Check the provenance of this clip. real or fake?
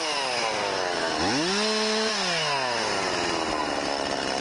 real